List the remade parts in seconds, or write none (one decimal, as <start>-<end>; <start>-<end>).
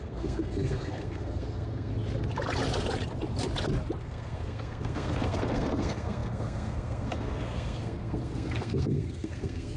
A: 0.0-1.9; 4.0-9.8